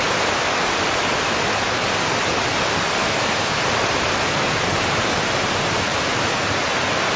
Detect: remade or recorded recorded